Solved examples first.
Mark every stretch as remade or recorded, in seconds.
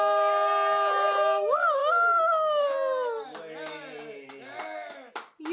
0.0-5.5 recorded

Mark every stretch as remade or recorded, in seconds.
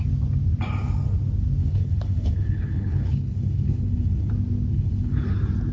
0.0-1.6 recorded; 1.6-4.3 remade; 4.3-4.7 recorded; 4.7-5.3 remade; 5.3-5.7 recorded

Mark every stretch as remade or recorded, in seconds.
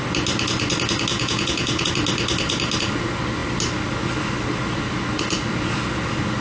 0.0-1.1 recorded; 1.1-1.9 remade; 1.9-6.4 recorded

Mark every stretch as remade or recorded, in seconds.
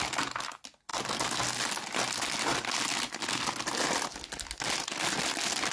0.0-5.7 recorded